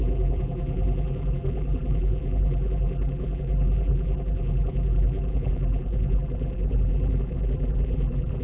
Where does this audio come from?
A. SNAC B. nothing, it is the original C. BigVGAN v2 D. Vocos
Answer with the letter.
C